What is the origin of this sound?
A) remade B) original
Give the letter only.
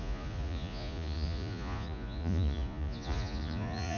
A